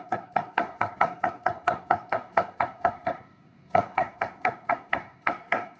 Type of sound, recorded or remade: remade